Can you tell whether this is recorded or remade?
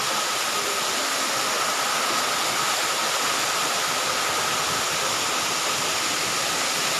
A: recorded